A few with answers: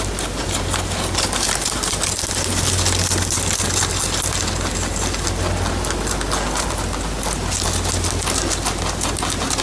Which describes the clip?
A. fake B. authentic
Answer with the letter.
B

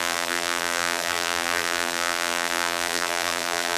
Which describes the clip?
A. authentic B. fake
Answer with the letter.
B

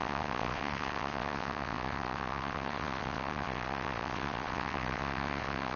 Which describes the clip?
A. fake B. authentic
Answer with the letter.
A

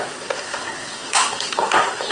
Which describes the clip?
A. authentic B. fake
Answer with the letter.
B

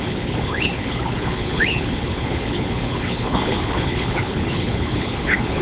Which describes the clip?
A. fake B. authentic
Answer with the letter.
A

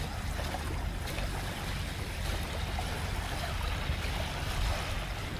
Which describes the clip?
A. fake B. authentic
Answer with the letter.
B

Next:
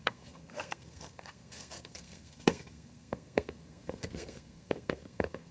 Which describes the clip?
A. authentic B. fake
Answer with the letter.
B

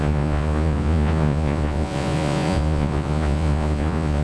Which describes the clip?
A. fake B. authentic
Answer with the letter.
A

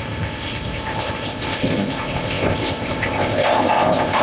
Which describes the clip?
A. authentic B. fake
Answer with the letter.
B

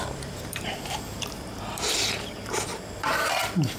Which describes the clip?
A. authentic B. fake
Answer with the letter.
B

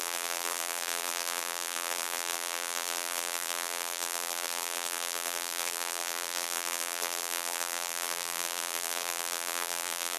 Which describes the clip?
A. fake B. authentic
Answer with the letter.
A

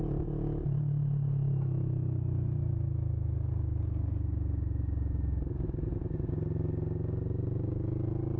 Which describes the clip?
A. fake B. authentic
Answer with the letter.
B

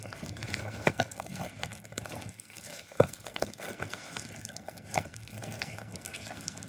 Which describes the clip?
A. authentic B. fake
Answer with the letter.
B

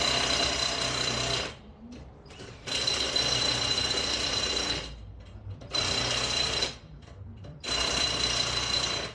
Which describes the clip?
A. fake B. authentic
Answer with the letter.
A